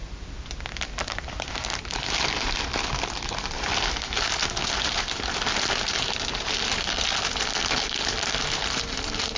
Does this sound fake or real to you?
real